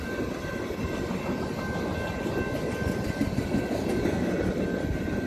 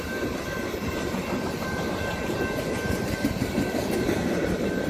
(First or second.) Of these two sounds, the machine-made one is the second